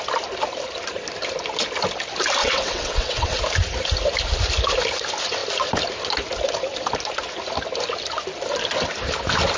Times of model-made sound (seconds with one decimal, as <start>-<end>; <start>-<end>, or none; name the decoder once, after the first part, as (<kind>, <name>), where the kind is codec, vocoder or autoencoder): 2.4-3.4 (vocoder, WaveNeXt)